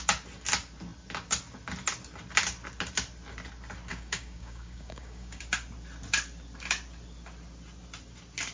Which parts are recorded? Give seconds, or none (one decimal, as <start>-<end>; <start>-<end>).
0.0-3.9; 5.4-8.5